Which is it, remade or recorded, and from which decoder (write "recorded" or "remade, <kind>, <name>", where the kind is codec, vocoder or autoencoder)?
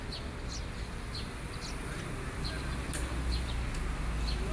recorded